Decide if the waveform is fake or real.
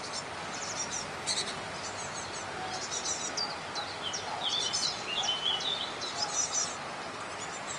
real